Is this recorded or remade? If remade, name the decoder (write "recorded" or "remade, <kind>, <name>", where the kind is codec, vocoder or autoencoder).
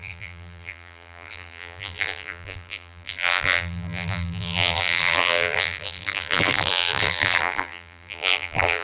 remade, vocoder, BigVGAN v2